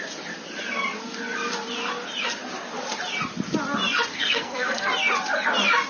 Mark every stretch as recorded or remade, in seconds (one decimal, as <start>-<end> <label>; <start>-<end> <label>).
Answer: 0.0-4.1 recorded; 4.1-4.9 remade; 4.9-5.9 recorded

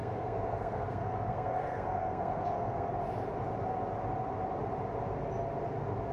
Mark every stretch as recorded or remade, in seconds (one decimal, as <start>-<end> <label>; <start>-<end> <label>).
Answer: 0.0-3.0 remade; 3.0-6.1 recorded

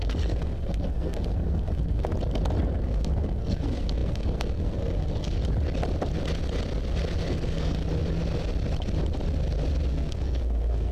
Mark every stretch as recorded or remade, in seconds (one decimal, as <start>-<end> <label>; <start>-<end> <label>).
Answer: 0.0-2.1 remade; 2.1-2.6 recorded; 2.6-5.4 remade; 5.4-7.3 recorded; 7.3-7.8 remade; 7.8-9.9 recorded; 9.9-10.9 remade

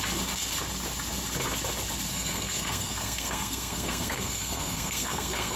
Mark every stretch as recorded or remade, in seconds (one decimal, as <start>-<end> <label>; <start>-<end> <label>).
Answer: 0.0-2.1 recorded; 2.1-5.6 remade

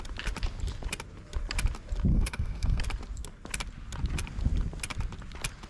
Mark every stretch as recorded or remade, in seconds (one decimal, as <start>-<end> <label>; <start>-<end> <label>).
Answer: 0.0-2.1 recorded; 2.1-2.8 remade; 2.8-5.7 recorded

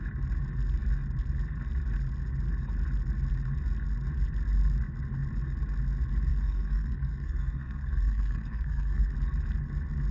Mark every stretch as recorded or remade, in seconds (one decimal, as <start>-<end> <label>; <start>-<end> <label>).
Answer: 0.0-6.3 recorded; 6.3-9.1 remade; 9.1-10.1 recorded

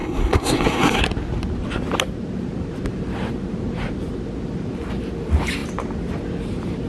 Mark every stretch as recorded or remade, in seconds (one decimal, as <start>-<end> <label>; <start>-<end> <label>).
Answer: 0.0-1.0 remade; 1.0-6.9 recorded

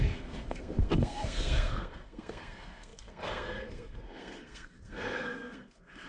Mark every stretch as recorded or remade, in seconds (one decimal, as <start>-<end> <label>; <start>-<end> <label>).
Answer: 0.0-6.1 remade